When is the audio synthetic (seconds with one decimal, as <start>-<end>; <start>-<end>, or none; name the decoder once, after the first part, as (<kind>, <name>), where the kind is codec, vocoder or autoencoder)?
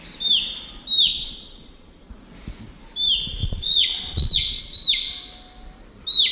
1.1-2.1 (vocoder, Vocos); 3.4-4.6